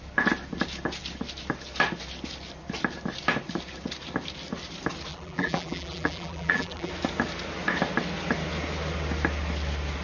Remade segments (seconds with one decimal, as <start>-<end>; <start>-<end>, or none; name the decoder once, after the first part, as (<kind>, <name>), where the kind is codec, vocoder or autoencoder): 5.1-6.9 (vocoder, BigVGAN v2)